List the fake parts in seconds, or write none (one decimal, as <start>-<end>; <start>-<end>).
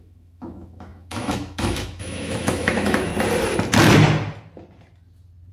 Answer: 0.0-3.1